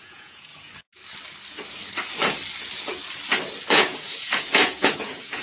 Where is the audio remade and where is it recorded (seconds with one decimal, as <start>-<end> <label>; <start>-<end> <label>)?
0.0-0.5 remade; 0.5-3.7 recorded; 3.7-5.4 remade